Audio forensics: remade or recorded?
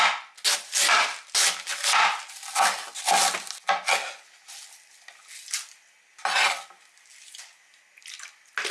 recorded